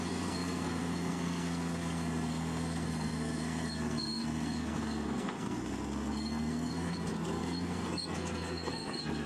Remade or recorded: remade